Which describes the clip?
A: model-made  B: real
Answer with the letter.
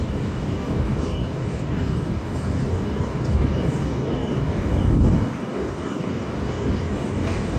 A